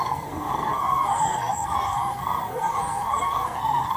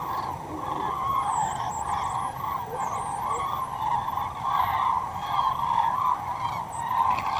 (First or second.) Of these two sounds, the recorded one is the second